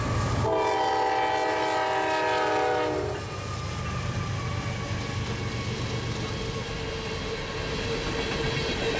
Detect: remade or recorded recorded